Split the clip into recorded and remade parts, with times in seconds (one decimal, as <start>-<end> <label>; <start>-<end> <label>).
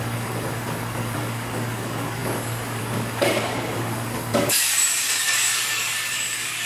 0.0-6.7 remade